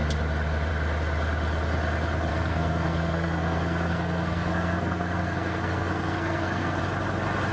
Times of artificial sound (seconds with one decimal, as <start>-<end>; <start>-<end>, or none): 2.3-6.8